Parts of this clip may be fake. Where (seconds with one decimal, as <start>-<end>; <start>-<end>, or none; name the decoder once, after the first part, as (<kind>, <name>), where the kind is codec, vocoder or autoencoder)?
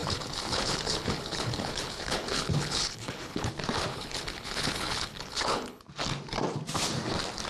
0.0-3.5 (codec, HILCodec); 3.9-5.8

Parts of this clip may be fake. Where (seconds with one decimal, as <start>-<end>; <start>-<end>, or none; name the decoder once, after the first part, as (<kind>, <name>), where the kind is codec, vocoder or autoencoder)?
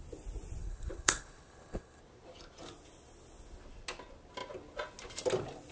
0.6-2.0 (codec, HILCodec)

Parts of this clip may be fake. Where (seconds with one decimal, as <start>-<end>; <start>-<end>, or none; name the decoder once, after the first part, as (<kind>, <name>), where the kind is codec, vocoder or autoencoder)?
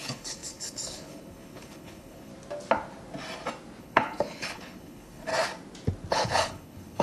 0.0-2.3 (codec, HILCodec); 3.8-5.3; 6.1-7.0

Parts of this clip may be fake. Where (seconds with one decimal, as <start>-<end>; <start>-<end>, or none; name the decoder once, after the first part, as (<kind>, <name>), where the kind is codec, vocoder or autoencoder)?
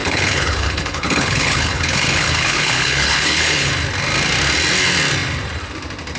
0.0-3.7 (codec, HILCodec)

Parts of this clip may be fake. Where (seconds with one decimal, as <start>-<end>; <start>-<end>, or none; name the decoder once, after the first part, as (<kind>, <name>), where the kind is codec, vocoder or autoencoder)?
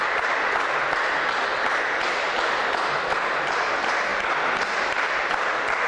none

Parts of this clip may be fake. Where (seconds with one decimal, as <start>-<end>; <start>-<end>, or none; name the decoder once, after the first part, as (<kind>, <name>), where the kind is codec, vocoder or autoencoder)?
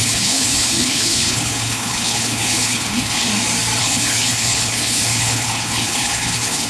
0.0-3.3 (codec, HILCodec); 3.8-6.7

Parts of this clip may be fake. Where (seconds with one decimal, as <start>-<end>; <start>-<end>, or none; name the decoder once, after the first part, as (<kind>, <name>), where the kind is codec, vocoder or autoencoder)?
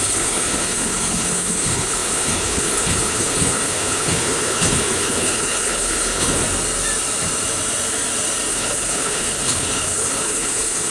0.0-6.4 (codec, HILCodec); 8.5-10.9